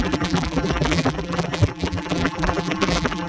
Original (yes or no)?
no